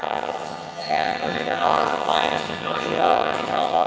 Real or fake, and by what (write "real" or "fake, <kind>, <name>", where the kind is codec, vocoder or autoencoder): fake, vocoder, HiFi-GAN